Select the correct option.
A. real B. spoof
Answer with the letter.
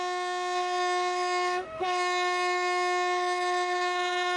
B